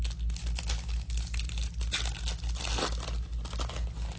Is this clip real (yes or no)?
yes